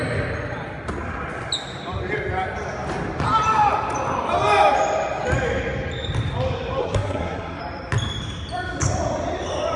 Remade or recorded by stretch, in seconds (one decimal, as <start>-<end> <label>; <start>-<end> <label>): 0.0-6.8 recorded; 6.8-7.6 remade; 7.6-9.8 recorded